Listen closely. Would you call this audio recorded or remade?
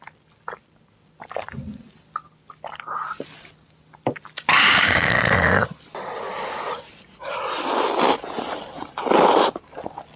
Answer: recorded